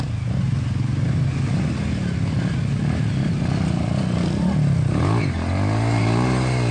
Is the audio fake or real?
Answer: real